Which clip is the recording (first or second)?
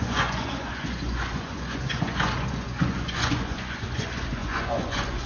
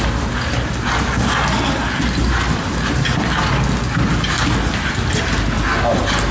second